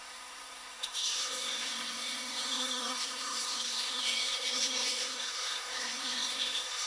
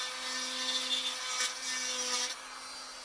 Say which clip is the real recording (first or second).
second